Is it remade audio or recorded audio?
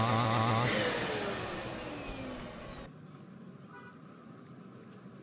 recorded